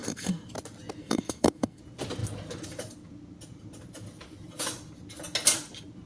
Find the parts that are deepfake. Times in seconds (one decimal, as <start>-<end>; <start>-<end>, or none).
0.0-0.5; 1.0-1.8